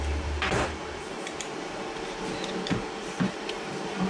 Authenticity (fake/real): fake